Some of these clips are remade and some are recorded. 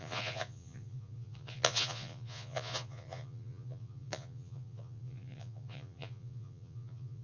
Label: remade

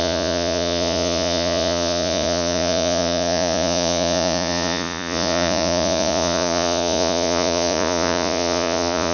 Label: remade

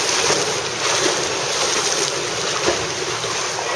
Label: recorded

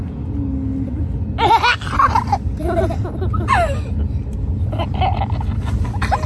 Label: recorded